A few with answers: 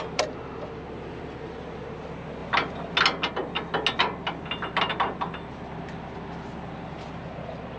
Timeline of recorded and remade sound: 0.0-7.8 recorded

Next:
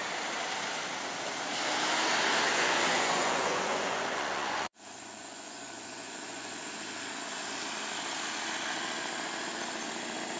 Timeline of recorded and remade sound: 0.0-2.5 recorded; 2.5-6.6 remade; 6.6-10.4 recorded

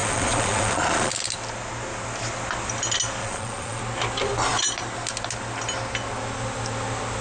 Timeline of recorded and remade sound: 0.0-1.1 remade; 1.1-3.2 recorded; 3.2-3.8 remade; 3.8-7.2 recorded

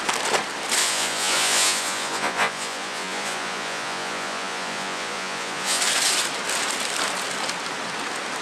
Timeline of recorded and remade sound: 0.0-0.8 recorded; 0.8-5.8 remade; 5.8-8.4 recorded

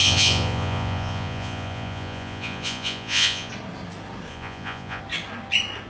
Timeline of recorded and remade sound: 0.0-3.5 remade; 3.5-4.3 recorded; 4.3-5.0 remade; 5.0-5.9 recorded

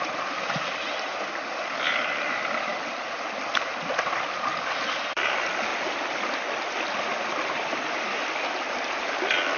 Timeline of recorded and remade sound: 0.0-9.6 recorded

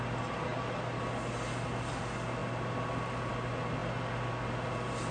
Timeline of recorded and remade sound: 0.0-5.1 recorded